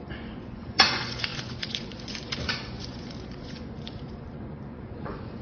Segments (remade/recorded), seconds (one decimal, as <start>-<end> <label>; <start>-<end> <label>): 0.0-5.4 remade